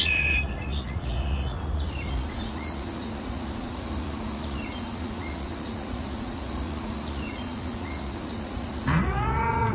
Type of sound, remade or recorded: remade